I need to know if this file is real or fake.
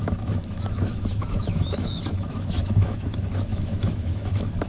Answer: fake